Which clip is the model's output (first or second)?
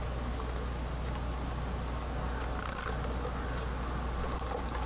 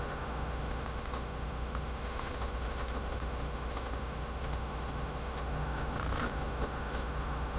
second